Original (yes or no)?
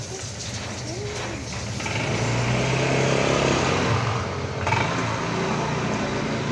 yes